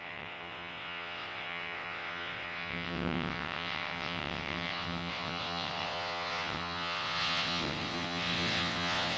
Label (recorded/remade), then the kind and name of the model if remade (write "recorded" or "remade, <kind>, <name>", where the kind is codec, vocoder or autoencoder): remade, vocoder, WaveNeXt